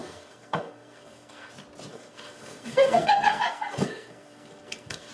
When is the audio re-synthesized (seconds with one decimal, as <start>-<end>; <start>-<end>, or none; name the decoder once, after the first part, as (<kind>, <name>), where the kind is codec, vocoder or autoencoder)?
0.0-1.5 (codec, SNAC); 1.9-5.1